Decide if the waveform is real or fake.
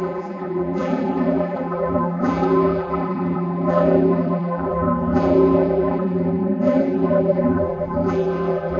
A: fake